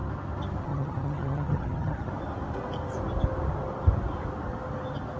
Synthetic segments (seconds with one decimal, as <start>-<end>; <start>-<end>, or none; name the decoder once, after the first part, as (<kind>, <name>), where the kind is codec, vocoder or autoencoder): 0.6-2.1 (vocoder, HiFi-GAN)